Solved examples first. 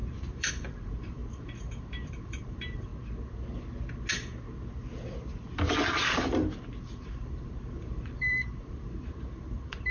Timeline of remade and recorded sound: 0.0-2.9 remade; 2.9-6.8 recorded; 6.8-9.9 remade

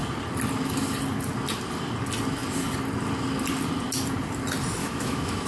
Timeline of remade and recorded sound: 0.0-4.8 recorded; 4.8-5.5 remade

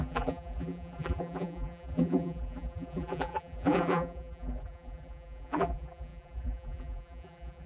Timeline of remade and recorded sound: 0.0-7.7 remade

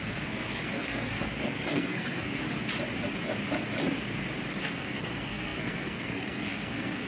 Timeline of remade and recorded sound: 0.0-2.4 remade; 2.4-4.6 recorded; 4.6-7.1 remade

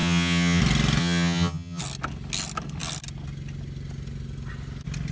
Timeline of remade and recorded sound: 0.0-0.6 remade; 0.6-1.0 recorded; 1.0-1.8 remade; 1.8-5.1 recorded

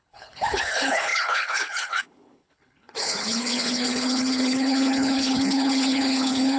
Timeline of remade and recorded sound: 0.0-6.6 remade